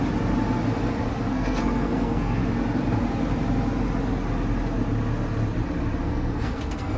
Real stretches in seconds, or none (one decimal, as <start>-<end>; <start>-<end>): 0.0-1.3; 2.4-6.0

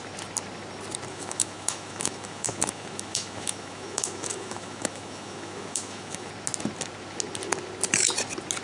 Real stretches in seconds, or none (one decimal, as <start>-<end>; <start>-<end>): 0.0-1.1; 6.3-8.6